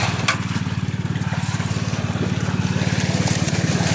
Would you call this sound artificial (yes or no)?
no